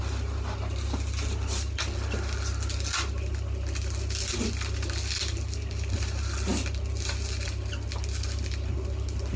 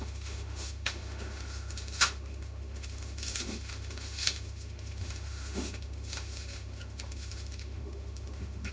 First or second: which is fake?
second